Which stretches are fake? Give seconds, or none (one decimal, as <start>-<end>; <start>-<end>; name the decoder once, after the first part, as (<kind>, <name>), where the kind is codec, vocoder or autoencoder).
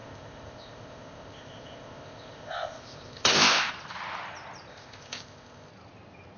0.0-3.7 (codec, ZipCodec); 4.7-5.7